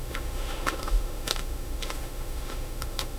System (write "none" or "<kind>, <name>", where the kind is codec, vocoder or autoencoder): autoencoder, DAC-VAE